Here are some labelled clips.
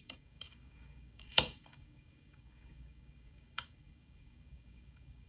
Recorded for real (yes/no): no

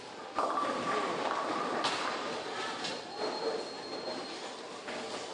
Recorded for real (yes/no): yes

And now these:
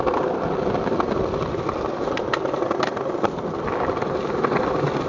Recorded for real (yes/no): yes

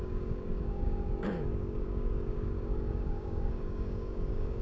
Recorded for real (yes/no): no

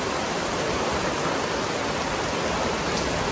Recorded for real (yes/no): yes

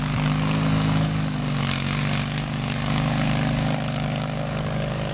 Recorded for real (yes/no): no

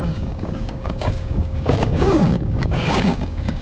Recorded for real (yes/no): no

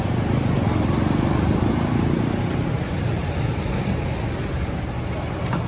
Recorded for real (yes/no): yes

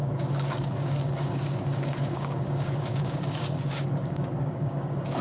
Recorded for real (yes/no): no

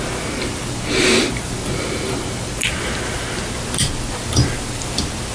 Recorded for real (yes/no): yes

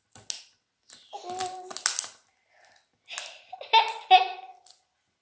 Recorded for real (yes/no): yes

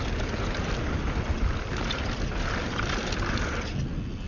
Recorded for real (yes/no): yes